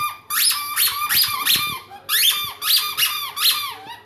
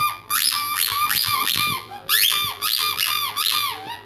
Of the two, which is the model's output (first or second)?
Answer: second